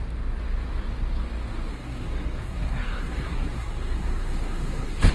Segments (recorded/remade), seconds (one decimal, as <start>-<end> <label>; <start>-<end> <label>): 0.0-1.7 recorded; 1.7-5.1 remade

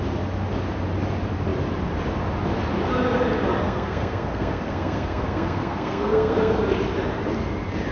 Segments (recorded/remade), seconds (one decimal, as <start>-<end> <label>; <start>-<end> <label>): 0.0-3.6 recorded; 3.6-6.6 remade; 6.6-7.9 recorded

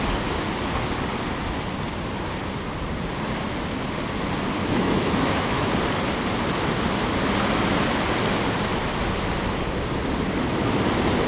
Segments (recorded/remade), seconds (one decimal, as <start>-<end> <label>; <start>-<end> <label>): 0.0-4.6 recorded; 4.6-5.7 remade; 5.7-11.3 recorded

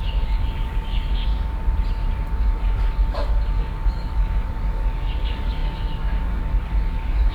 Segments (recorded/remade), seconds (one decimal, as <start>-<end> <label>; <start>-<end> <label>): 0.0-1.2 remade; 1.2-2.4 recorded; 2.4-7.3 remade

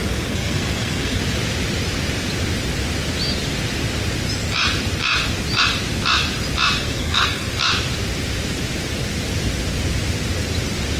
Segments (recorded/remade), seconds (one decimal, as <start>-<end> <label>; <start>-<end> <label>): 0.0-1.2 remade; 1.2-6.8 recorded; 6.8-7.5 remade; 7.5-11.0 recorded

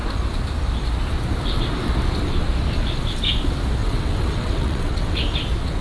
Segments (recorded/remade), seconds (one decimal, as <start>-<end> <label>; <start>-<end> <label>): 0.0-3.8 recorded; 3.8-5.2 remade; 5.2-5.8 recorded